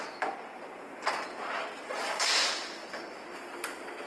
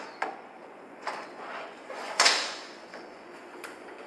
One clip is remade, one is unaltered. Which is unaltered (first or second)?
first